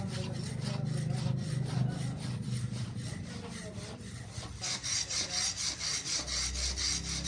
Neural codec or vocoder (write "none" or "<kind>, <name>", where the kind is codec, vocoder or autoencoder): none